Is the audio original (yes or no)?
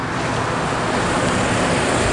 yes